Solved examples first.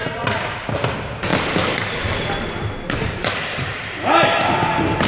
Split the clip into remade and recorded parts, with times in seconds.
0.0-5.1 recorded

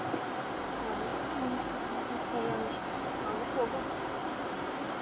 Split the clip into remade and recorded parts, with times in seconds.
0.0-4.2 recorded; 4.2-5.0 remade

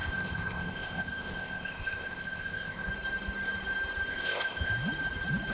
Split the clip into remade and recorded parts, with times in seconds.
0.0-2.9 remade; 2.9-4.1 recorded; 4.1-4.7 remade; 4.7-5.5 recorded

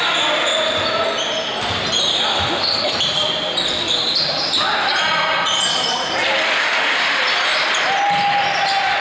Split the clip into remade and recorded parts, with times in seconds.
0.0-6.6 recorded; 6.6-7.2 remade; 7.2-9.0 recorded

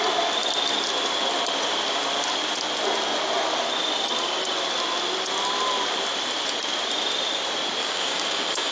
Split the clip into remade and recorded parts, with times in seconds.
0.0-7.8 recorded; 7.8-8.7 remade